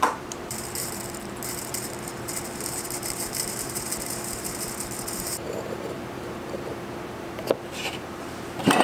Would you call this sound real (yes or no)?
no